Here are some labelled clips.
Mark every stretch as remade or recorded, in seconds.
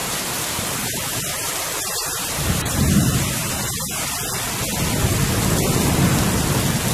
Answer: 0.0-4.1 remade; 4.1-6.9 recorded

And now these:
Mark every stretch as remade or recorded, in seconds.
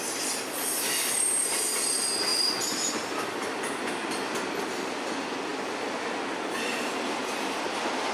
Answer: 0.0-8.1 recorded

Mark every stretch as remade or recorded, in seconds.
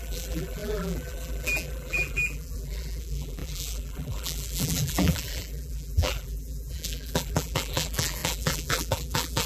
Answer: 0.0-9.5 remade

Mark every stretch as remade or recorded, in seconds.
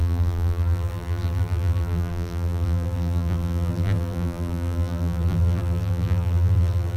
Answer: 0.0-7.0 remade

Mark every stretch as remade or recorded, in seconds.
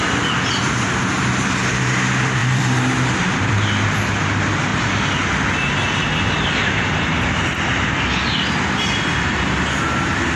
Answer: 0.0-2.4 recorded; 2.4-3.3 remade; 3.3-4.7 recorded; 4.7-5.2 remade; 5.2-10.4 recorded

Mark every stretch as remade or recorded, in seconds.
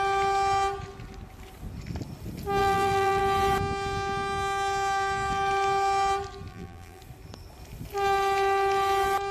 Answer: 0.0-2.6 recorded; 2.6-3.2 remade; 3.2-6.5 recorded; 6.5-7.0 remade; 7.0-9.3 recorded